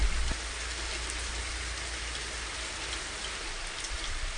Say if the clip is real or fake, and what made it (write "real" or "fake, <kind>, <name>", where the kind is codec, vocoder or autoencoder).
real